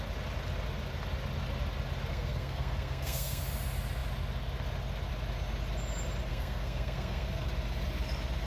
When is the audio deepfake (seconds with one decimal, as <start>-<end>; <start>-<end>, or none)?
2.1-3.4; 6.3-7.5